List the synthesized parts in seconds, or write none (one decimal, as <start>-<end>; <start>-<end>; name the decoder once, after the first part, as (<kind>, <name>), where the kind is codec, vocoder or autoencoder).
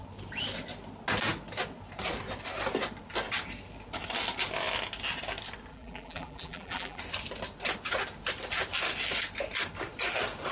5.7-7.0 (vocoder, BigVGAN v2)